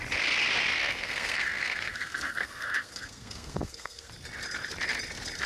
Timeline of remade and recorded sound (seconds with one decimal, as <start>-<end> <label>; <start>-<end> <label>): 0.0-0.8 recorded; 0.8-4.1 remade; 4.1-5.5 recorded